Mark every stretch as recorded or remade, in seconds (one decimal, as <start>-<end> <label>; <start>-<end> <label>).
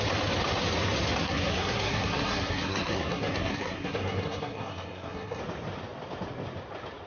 0.0-1.2 recorded; 1.2-5.4 remade; 5.4-7.1 recorded